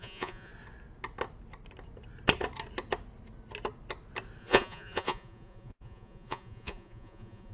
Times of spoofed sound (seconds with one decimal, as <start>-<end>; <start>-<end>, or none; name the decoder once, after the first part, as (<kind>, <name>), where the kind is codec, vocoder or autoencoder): 0.0-0.5 (vocoder, Vocos); 4.4-7.5